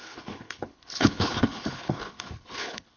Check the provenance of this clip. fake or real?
fake